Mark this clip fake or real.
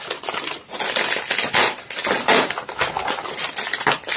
real